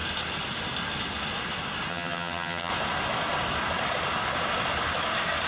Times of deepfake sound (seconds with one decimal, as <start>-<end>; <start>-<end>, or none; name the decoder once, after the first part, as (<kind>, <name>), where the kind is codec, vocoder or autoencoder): 1.9-2.7 (vocoder, HiFi-GAN)